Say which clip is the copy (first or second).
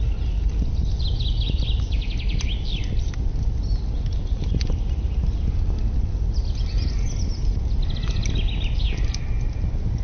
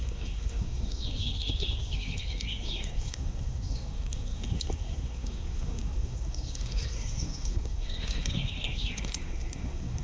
second